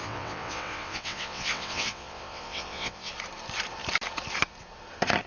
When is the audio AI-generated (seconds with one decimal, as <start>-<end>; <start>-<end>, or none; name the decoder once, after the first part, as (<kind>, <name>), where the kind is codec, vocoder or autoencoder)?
0.0-3.1 (vocoder, WaveNeXt)